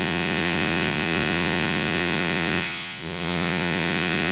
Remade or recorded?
remade